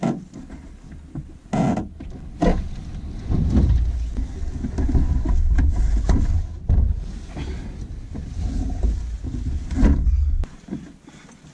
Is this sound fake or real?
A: real